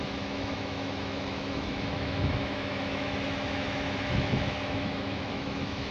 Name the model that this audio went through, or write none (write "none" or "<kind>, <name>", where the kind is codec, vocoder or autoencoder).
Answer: autoencoder, DAC-VAE